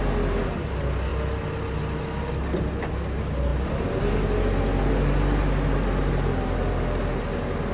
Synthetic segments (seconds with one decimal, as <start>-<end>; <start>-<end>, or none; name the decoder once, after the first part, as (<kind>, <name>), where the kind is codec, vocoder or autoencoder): none

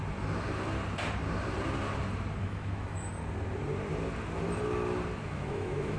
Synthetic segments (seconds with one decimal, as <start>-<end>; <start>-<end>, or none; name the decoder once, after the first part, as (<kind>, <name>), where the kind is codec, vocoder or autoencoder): 2.4-3.1 (autoencoder, DAC-VAE); 5.2-6.0

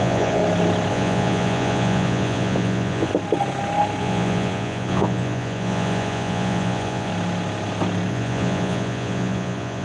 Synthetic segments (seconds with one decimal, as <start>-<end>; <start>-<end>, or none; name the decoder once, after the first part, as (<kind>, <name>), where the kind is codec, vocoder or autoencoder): 0.0-0.4 (vocoder, Vocos); 0.9-3.1; 4.0-7.1; 8.1-9.8

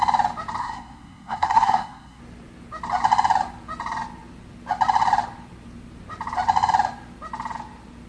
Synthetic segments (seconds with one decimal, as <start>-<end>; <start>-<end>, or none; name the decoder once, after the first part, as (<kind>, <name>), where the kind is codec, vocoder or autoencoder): 0.6-2.2 (codec, SNAC)

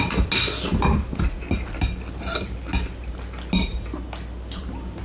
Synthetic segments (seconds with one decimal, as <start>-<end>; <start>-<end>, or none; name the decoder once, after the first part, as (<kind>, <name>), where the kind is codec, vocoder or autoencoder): none

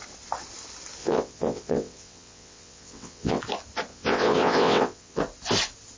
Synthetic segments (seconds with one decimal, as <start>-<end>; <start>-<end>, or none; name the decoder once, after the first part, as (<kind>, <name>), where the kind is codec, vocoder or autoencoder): 1.0-3.4 (vocoder, WaveNeXt); 3.9-5.2

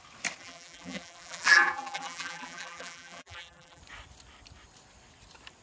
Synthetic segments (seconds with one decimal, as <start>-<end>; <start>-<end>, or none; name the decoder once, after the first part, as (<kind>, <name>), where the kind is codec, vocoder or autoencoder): 0.4-3.8 (vocoder, BigVGAN v2)

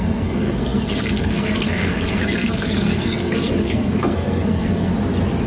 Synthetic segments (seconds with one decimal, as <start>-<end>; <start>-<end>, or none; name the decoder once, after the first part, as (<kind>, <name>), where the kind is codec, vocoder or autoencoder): 0.0-4.9 (codec, SNAC)